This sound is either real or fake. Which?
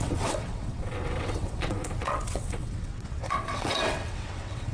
fake